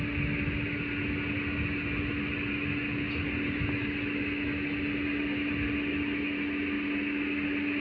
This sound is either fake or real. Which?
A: real